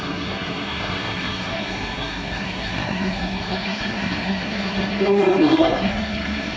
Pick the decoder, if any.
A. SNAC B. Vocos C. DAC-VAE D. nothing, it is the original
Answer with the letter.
A